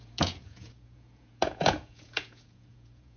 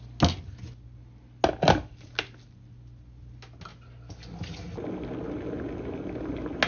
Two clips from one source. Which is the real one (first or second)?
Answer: second